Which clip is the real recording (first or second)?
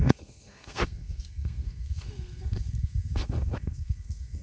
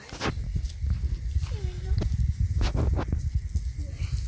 second